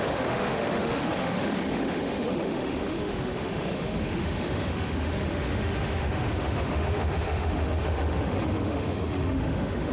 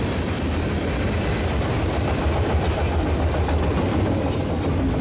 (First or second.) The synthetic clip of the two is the first